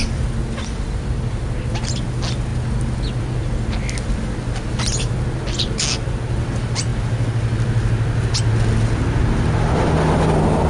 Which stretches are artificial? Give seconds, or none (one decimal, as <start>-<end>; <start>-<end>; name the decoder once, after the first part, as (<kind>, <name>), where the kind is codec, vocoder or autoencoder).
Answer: none

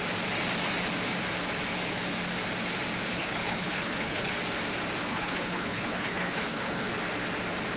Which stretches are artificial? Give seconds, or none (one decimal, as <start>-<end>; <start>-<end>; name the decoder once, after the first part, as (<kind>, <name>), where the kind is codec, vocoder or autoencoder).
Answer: 3.1-4.3 (codec, HILCodec); 5.1-6.9